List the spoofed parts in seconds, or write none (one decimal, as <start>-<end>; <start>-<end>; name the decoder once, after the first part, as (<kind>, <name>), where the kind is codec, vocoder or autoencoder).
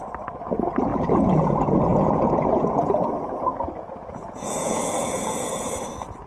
0.9-1.5 (vocoder, Vocos); 1.9-5.7